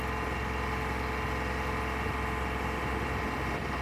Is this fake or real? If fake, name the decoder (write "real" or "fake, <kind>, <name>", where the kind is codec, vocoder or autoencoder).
real